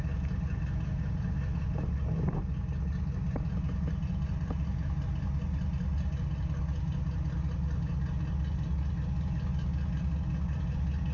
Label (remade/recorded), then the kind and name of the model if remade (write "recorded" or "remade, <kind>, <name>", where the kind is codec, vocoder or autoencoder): recorded